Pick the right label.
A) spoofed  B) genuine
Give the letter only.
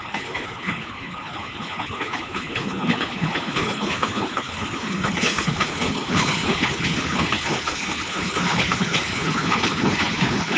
A